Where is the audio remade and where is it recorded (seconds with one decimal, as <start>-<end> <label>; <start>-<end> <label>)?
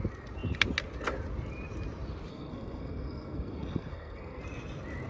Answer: 0.0-2.3 recorded; 2.3-4.4 remade; 4.4-5.1 recorded